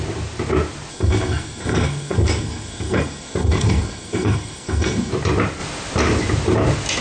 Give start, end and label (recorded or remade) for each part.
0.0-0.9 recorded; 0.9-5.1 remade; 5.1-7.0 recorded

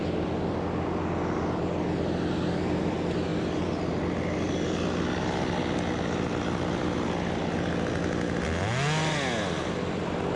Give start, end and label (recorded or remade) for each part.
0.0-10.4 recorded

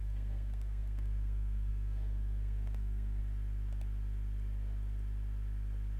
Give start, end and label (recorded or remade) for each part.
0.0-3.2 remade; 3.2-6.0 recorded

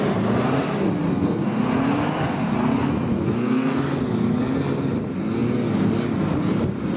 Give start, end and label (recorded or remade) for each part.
0.0-1.1 recorded; 1.1-1.6 remade; 1.6-3.2 recorded; 3.2-3.8 remade; 3.8-7.0 recorded

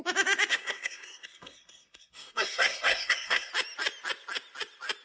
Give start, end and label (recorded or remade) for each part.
0.0-0.5 recorded; 0.5-3.5 remade; 3.5-5.0 recorded